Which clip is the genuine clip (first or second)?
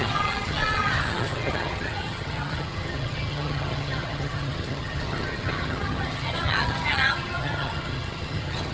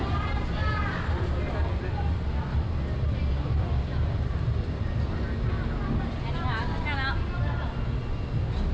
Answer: second